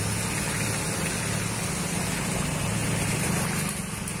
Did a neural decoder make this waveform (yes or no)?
no